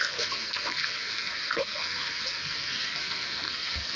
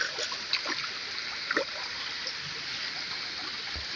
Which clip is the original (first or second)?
second